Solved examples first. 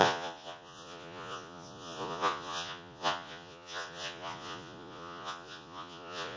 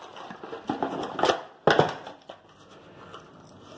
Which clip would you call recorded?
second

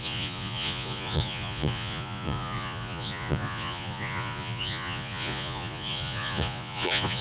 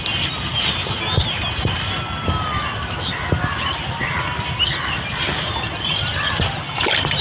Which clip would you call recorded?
second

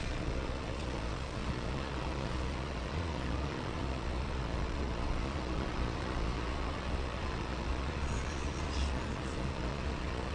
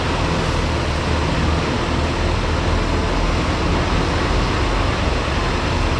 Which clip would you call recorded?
second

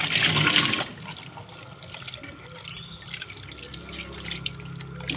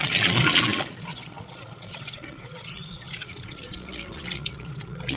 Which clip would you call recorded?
first